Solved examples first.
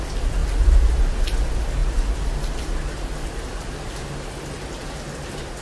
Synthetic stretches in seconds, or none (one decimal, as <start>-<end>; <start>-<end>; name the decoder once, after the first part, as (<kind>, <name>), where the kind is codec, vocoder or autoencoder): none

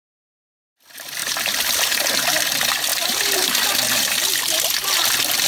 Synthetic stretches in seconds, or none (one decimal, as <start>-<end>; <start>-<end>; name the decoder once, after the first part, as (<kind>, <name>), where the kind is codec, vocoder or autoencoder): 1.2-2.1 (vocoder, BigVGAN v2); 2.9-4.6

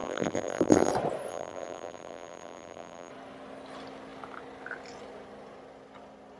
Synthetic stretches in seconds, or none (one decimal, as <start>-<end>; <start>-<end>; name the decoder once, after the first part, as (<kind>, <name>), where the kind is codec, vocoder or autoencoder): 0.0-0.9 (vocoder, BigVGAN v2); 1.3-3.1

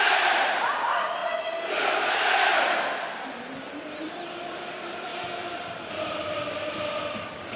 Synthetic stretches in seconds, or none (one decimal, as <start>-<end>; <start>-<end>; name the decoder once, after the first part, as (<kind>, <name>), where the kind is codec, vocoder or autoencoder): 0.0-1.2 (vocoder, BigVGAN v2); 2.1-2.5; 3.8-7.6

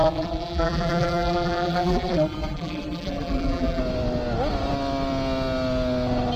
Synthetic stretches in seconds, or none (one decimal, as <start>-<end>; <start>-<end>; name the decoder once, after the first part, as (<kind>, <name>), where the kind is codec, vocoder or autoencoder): 0.0-3.8 (vocoder, BigVGAN v2)